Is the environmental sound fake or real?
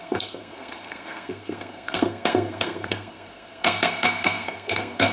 fake